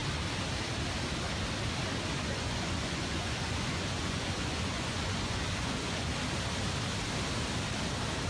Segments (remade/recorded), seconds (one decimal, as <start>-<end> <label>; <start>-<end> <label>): 0.0-2.2 recorded; 2.2-6.1 remade; 6.1-8.3 recorded